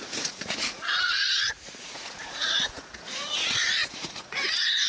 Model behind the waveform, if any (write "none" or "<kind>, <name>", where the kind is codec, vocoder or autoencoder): vocoder, Vocos